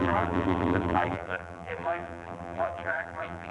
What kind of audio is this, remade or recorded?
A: remade